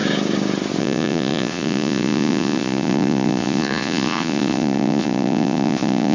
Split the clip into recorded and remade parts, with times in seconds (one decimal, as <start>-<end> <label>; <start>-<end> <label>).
0.0-0.8 recorded; 0.8-6.1 remade